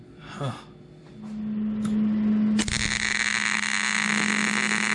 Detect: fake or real real